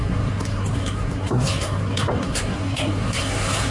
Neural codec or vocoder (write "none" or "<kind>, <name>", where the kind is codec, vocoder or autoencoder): codec, SNAC